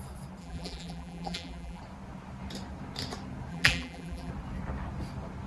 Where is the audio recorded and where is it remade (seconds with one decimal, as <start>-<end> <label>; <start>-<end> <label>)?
0.0-0.4 recorded; 0.4-1.8 remade; 1.8-3.5 recorded; 3.5-4.3 remade; 4.3-5.5 recorded

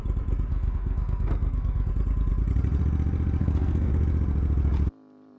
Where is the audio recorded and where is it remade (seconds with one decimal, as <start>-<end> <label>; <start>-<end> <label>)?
0.0-0.5 recorded; 0.5-1.9 remade; 1.9-3.4 recorded; 3.4-3.9 remade; 3.9-5.4 recorded